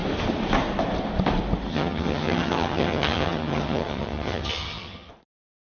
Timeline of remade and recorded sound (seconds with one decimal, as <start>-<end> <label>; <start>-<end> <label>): 0.0-1.7 recorded; 1.7-5.1 remade; 5.1-5.6 recorded